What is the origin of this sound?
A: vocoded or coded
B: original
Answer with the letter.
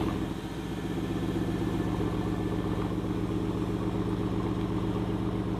B